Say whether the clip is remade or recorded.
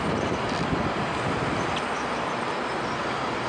recorded